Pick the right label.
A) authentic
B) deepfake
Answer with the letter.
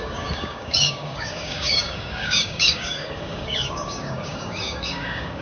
B